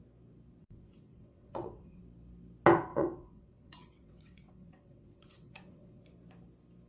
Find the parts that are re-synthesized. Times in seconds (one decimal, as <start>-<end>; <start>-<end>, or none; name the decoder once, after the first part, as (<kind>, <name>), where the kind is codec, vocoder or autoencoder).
0.6-2.0 (vocoder, WaveNeXt); 2.9-6.0